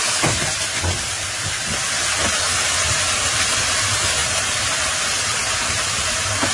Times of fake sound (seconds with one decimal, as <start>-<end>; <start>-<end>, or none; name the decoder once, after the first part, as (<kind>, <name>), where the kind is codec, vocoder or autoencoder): 0.0-1.8 (vocoder, BigVGAN v2); 2.4-6.5